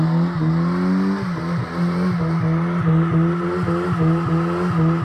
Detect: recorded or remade recorded